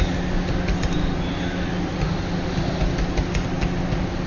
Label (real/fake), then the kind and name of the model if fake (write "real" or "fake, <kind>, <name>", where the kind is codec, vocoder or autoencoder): real